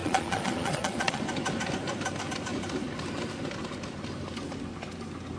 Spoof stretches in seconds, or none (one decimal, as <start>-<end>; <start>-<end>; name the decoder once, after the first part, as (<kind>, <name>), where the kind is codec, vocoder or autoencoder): 0.0-1.2 (vocoder, Vocos)